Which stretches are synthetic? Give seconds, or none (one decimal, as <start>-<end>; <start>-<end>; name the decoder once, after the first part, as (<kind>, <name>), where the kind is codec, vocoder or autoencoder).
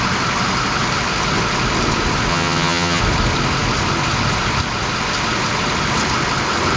2.3-3.0 (vocoder, HiFi-GAN)